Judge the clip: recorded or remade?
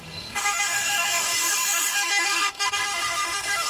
remade